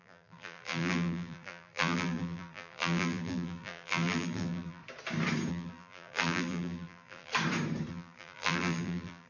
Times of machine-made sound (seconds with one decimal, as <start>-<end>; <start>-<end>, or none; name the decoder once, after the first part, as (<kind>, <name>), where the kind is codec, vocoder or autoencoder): 0.0-4.8 (vocoder, BigVGAN v2); 5.5-7.3; 7.9-9.3